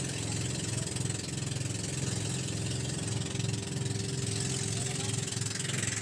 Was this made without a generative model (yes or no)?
yes